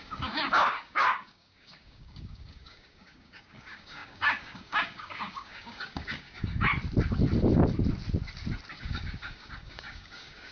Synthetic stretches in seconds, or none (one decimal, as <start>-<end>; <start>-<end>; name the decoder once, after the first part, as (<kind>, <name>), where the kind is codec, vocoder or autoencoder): 0.0-6.7 (codec, DAC); 8.7-10.5